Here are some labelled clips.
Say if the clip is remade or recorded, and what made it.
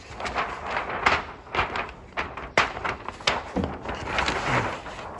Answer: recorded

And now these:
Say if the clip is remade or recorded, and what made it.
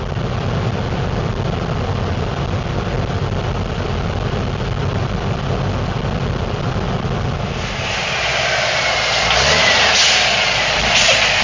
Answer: recorded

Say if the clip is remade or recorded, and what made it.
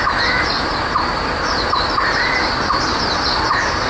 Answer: recorded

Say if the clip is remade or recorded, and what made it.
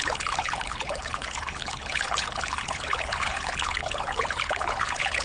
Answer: remade, codec, HILCodec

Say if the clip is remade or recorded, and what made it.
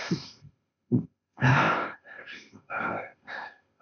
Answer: remade, codec, ZipCodec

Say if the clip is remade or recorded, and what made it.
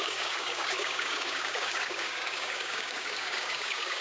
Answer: remade, codec, DAC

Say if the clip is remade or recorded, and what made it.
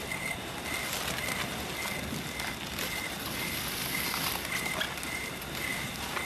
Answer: recorded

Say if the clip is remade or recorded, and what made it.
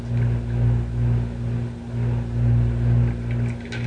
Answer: recorded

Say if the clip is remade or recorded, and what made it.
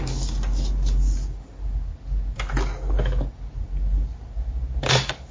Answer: recorded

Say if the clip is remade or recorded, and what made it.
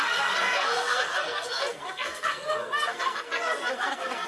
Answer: remade, codec, SNAC